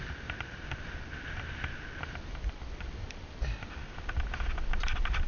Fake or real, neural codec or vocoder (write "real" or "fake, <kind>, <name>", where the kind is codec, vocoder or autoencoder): real